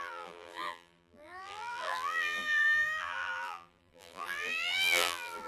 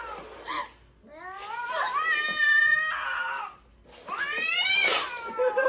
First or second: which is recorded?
second